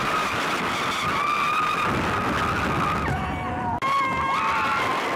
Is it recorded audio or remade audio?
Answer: recorded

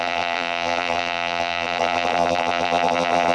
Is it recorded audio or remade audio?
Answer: remade